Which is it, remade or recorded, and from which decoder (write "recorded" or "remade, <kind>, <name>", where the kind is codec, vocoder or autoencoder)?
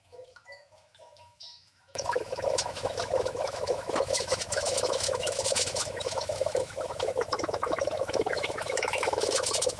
remade, autoencoder, DAC-VAE